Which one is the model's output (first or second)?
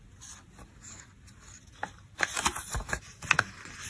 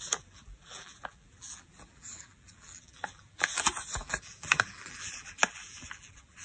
second